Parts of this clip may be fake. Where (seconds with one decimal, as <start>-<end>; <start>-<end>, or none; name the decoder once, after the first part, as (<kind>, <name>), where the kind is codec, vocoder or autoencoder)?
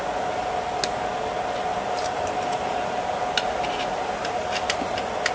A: 1.7-5.3 (vocoder, BigVGAN v2)